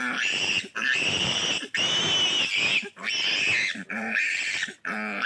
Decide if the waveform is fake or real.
real